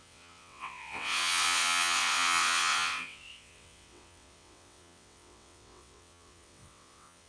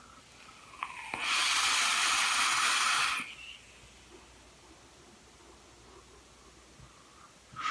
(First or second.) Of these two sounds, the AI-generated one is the first